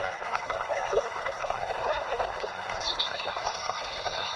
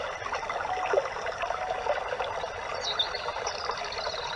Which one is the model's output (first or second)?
first